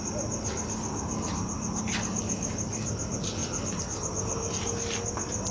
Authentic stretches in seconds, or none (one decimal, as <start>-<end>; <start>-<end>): 0.0-5.5